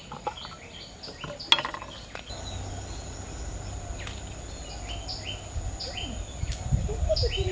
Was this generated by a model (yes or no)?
no